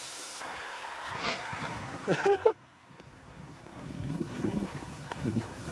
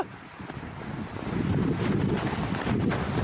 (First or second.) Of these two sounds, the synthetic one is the first